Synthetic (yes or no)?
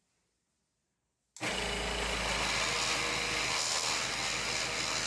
no